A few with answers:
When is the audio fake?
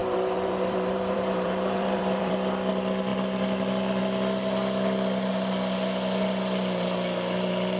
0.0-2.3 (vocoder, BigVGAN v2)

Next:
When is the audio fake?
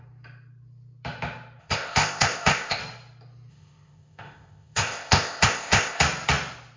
1.6-2.8 (codec, ZipCodec); 3.5-6.0